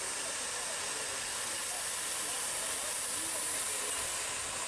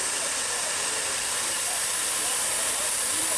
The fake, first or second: second